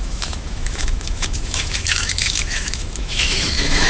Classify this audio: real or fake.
fake